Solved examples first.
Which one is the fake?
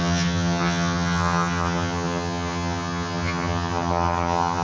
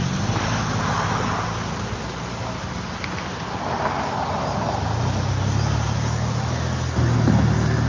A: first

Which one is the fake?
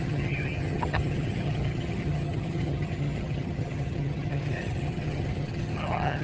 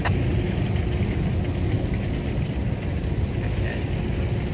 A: first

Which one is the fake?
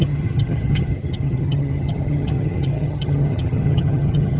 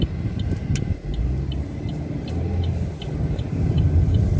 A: first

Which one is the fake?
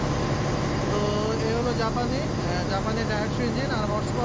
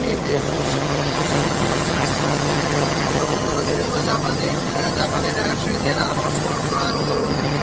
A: second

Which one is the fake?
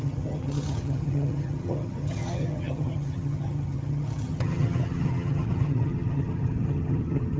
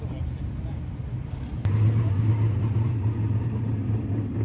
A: first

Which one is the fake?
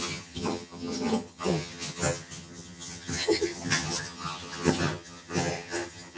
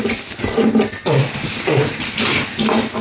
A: first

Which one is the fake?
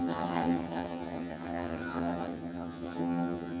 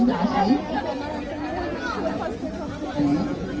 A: first